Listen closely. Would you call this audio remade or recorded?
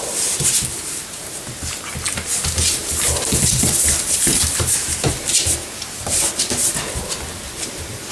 recorded